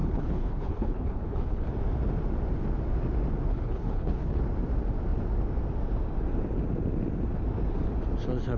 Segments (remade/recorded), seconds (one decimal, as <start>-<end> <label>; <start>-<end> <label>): 0.0-1.7 remade; 1.7-3.5 recorded; 3.5-4.4 remade; 4.4-8.6 recorded